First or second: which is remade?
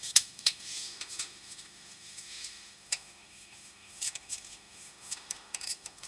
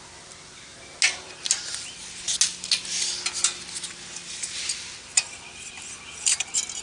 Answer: first